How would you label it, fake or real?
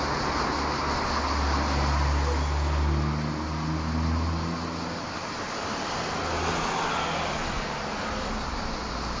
real